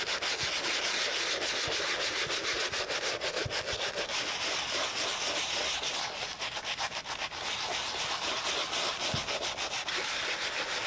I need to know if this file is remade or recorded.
recorded